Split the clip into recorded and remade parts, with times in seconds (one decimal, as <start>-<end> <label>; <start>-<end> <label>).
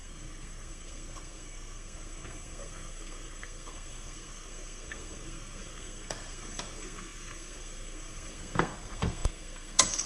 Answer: 0.0-10.1 remade